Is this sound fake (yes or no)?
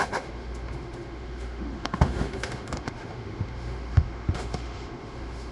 yes